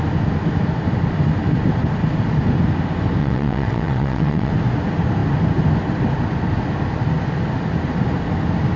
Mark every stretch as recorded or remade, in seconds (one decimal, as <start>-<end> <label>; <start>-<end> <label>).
0.0-3.2 recorded; 3.2-4.5 remade; 4.5-8.8 recorded

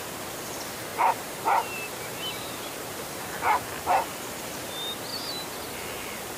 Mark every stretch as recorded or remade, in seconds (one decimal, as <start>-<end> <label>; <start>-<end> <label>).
0.0-0.9 recorded; 0.9-3.3 remade; 3.3-5.1 recorded; 5.1-5.7 remade; 5.7-6.4 recorded